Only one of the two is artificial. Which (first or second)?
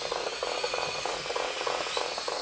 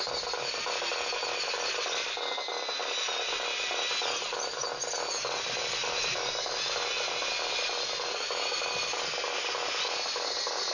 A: first